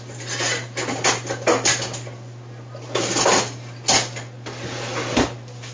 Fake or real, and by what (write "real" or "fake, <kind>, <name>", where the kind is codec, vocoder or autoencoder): real